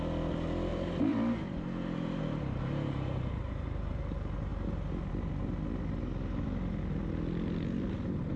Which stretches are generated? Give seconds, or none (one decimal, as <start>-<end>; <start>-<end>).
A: 0.7-4.0